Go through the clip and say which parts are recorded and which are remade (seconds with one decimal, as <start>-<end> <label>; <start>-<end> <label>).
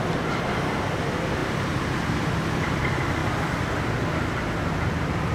0.0-3.2 remade; 3.2-5.3 recorded